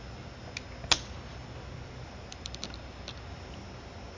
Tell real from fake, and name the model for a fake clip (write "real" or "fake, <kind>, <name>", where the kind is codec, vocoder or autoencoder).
real